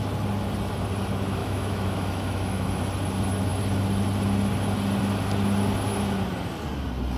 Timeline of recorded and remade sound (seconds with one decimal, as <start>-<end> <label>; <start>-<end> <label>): 0.0-1.4 recorded; 1.4-2.7 remade; 2.7-7.2 recorded